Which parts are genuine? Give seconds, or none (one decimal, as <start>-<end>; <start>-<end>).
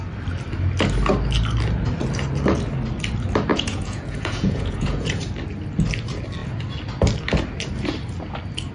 0.0-3.5; 5.2-8.7